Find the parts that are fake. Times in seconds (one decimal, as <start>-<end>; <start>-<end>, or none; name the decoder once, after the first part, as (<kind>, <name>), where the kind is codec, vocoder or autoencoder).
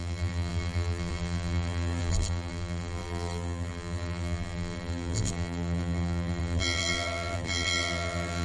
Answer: 0.0-8.4 (vocoder, BigVGAN v2)